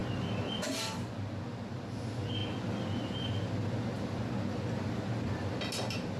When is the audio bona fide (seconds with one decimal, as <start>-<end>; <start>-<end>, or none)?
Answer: 0.0-6.2